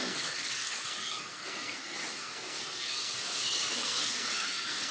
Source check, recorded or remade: remade